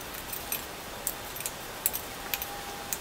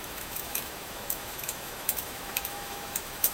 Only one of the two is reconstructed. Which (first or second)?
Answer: second